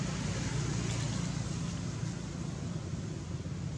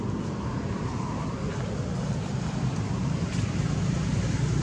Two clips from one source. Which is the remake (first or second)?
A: second